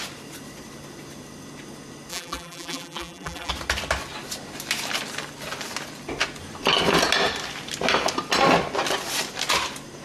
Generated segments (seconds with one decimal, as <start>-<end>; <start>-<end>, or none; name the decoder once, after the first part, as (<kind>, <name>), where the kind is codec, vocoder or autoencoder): 2.1-3.5 (vocoder, BigVGAN v2)